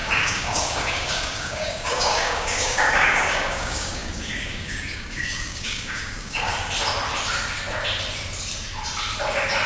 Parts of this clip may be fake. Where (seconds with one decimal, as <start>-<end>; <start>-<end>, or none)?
0.0-6.5